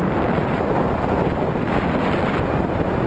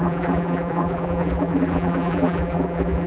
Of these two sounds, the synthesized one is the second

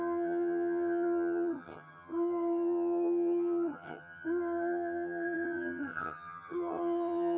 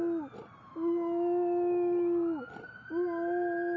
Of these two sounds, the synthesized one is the first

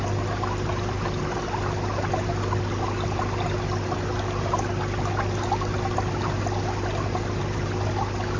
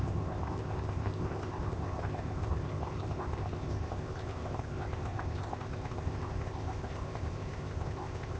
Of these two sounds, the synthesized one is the second